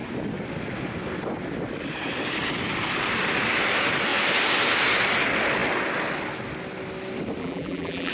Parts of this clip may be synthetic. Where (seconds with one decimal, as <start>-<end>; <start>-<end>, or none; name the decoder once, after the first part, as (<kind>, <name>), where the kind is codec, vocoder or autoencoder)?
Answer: 7.4-8.1 (vocoder, BigVGAN v2)